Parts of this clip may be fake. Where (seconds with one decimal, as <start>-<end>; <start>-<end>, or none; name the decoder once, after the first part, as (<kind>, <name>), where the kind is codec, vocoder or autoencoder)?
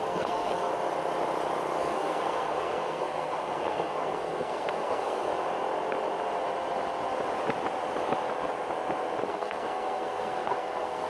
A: 0.0-0.7 (codec, SNAC); 1.8-5.3; 9.3-11.1